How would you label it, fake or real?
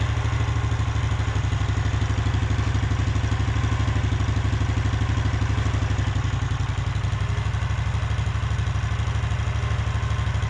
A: real